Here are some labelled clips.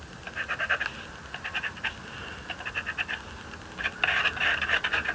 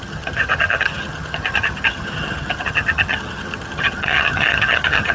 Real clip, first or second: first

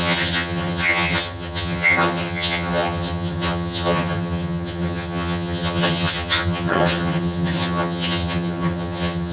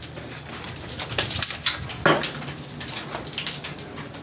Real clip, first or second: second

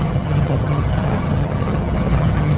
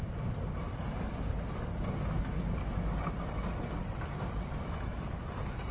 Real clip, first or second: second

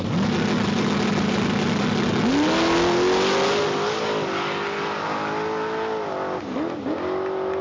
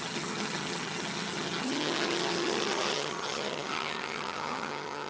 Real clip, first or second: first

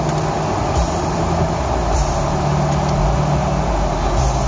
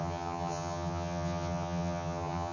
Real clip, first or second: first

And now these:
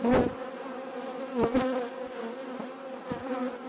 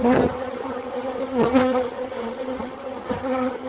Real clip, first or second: first